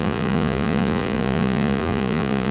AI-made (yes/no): yes